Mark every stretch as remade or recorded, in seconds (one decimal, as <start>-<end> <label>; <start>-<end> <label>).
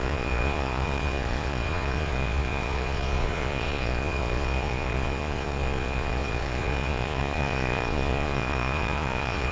0.0-9.5 remade